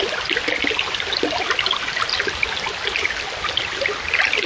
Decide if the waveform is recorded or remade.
recorded